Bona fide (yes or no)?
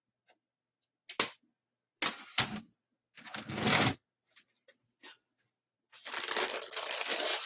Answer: yes